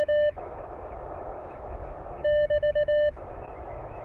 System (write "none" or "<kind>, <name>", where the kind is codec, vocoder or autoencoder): autoencoder, DAC-VAE